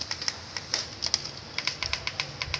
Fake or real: real